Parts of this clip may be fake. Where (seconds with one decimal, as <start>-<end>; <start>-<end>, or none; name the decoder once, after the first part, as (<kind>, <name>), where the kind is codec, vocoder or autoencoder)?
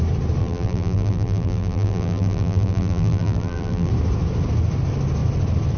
0.4-3.9 (vocoder, BigVGAN v2)